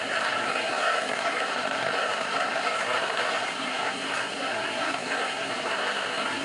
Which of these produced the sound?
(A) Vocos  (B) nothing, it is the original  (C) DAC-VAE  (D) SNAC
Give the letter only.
D